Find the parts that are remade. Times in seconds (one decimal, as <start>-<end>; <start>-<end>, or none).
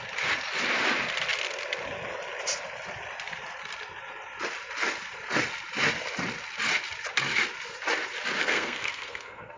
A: 8.4-9.6